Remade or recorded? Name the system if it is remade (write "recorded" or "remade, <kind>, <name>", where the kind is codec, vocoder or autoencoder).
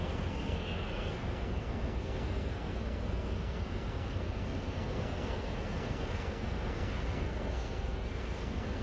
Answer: remade, codec, SNAC